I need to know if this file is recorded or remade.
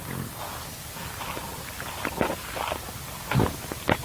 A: recorded